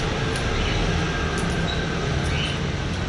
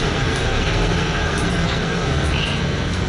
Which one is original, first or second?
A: first